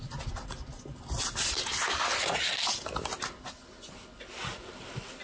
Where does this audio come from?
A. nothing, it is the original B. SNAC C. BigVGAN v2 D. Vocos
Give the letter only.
A